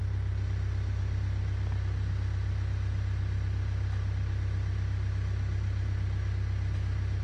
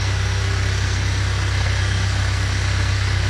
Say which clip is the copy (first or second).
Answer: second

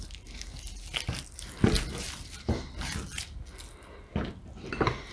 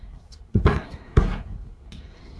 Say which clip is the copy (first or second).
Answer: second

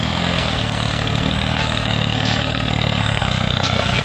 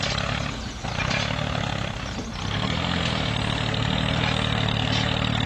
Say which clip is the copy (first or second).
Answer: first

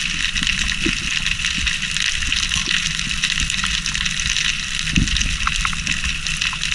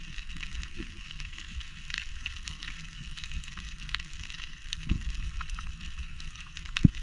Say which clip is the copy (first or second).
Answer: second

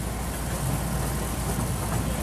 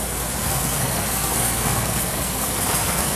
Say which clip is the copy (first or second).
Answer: second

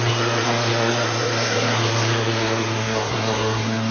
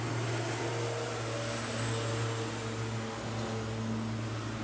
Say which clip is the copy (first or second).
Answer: first